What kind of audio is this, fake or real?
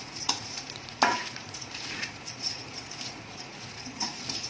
fake